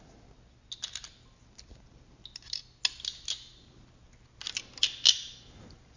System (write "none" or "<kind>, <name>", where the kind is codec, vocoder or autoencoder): none